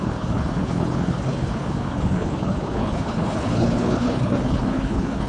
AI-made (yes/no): yes